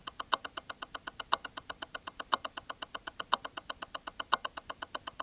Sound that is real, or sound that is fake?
real